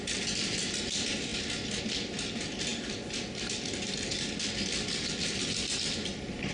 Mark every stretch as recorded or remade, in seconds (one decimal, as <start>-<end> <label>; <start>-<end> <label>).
0.0-6.5 recorded